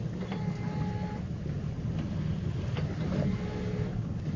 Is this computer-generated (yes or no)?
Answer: no